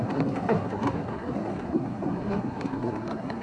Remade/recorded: remade